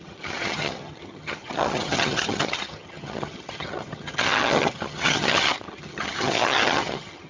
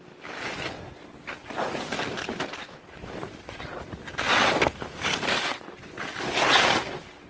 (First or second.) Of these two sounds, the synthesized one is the first